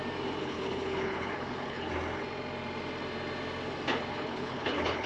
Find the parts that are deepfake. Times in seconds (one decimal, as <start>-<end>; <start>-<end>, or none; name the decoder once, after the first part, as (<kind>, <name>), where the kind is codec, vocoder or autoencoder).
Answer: 0.4-1.9 (codec, HILCodec); 4.1-5.1